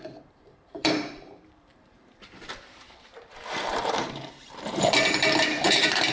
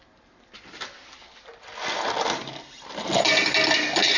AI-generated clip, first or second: first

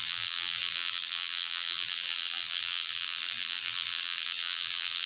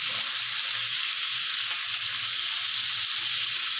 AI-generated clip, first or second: first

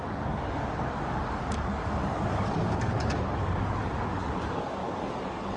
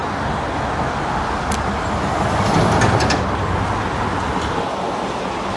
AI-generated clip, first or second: first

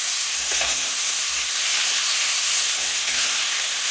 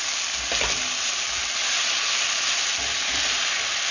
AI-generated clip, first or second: first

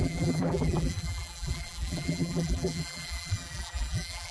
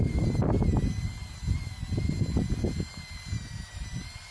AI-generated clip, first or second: first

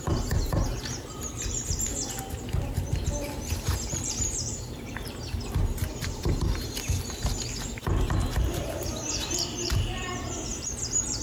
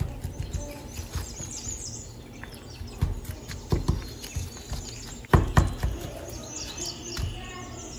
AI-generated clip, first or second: first